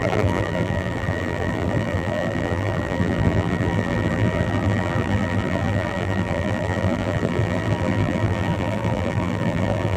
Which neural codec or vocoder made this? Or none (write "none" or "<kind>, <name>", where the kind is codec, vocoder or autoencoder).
vocoder, BigVGAN v2